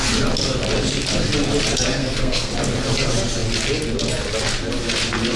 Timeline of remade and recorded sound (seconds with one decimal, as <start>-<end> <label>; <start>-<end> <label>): 0.0-2.0 recorded; 2.0-2.5 remade; 2.5-5.4 recorded